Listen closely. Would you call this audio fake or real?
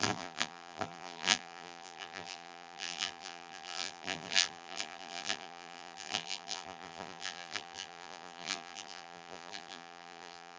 fake